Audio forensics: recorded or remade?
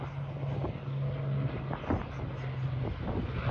recorded